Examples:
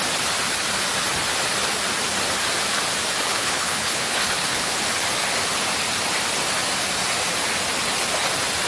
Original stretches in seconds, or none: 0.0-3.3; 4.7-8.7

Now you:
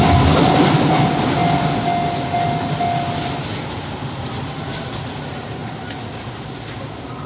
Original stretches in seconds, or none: 0.0-7.3

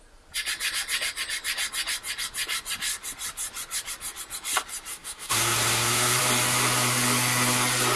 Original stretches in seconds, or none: 0.0-4.9; 6.2-8.0

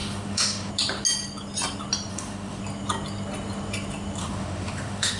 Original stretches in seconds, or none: 0.7-2.1; 2.6-4.2